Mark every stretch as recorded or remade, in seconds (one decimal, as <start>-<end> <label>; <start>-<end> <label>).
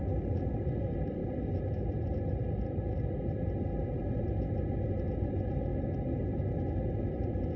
0.0-7.6 recorded